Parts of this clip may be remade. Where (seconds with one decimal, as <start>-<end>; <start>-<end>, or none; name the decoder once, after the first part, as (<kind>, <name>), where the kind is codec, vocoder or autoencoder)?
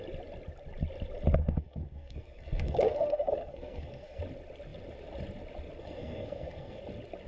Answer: 1.4-4.2 (codec, SNAC); 5.8-6.8